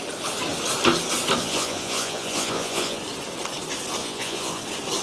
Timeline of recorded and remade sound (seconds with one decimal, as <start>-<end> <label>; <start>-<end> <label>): 0.0-1.4 recorded; 1.4-3.0 remade; 3.0-4.0 recorded; 4.0-4.6 remade; 4.6-5.0 recorded